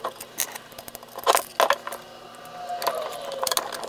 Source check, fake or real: real